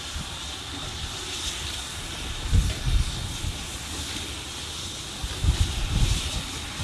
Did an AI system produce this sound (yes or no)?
no